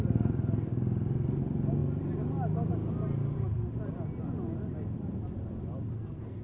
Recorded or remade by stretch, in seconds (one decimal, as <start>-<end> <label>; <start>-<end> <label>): 0.0-5.9 recorded; 5.9-6.4 remade